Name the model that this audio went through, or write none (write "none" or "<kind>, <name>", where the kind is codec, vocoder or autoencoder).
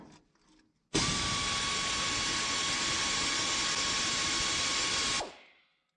none